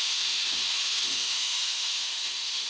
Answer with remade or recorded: remade